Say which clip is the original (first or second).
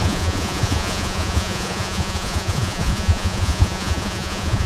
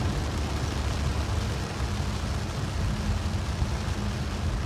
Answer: second